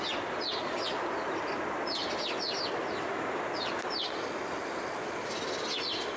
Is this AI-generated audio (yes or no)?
no